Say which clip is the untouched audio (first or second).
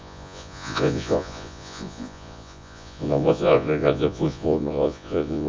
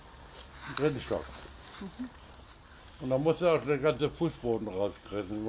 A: second